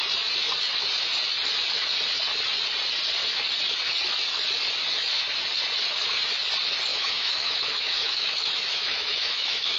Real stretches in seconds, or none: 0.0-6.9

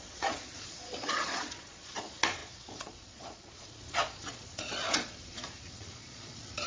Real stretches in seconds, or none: none